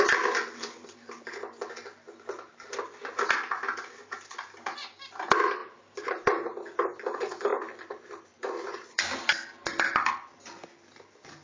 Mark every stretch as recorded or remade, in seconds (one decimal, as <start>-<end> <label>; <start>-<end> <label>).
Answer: 0.0-5.6 recorded; 5.6-6.1 remade; 6.1-7.5 recorded; 7.5-8.9 remade; 8.9-11.4 recorded